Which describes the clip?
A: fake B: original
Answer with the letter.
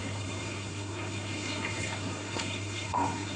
A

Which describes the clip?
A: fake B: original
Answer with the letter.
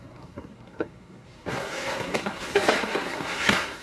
A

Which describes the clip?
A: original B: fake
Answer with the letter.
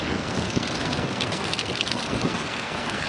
B